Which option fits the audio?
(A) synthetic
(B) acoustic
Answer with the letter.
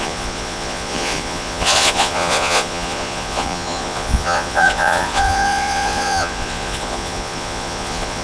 A